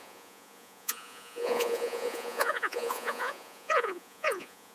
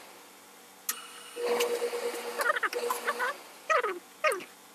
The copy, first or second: first